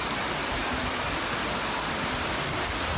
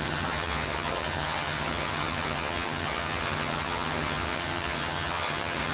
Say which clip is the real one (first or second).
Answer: first